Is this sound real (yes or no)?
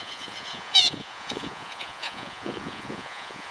no